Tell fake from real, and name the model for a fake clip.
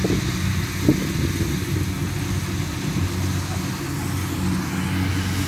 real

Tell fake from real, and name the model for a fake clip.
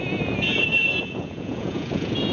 fake, vocoder, Vocos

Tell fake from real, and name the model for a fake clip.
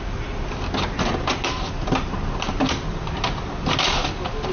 real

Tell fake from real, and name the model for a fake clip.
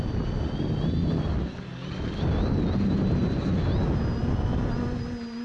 real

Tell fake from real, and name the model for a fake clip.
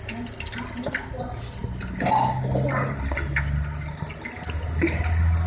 real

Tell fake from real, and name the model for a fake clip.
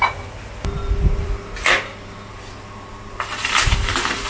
real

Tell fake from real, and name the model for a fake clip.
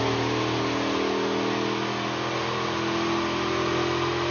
real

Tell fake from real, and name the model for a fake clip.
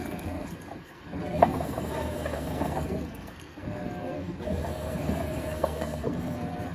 fake, codec, SNAC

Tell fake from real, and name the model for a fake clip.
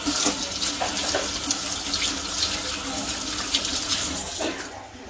real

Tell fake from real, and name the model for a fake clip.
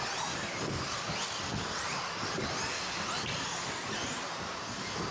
real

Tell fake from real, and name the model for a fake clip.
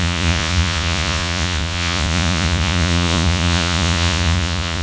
fake, vocoder, Vocos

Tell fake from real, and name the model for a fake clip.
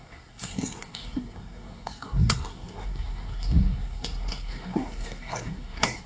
fake, codec, SNAC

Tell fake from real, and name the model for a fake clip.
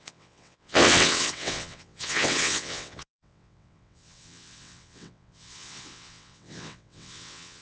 fake, vocoder, WaveNeXt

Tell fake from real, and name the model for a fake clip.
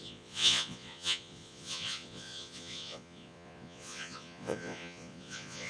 fake, vocoder, Vocos